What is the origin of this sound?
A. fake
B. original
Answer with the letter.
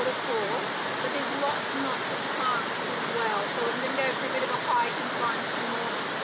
B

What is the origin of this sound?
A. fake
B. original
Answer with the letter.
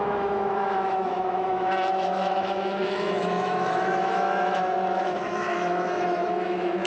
A